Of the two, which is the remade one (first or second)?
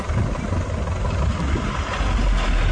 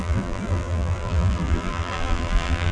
second